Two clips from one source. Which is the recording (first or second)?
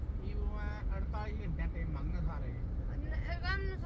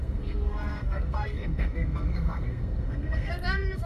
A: first